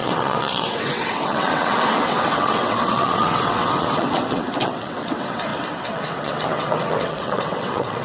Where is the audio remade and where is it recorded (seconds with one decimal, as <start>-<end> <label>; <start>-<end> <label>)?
0.0-8.0 remade